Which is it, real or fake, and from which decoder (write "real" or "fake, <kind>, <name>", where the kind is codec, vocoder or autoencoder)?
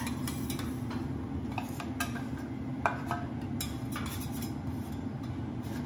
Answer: real